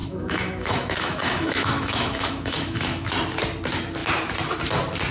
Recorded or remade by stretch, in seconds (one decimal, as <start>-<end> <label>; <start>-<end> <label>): 0.0-3.1 remade; 3.1-5.1 recorded